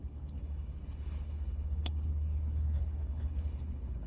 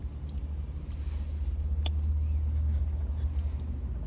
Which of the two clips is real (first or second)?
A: second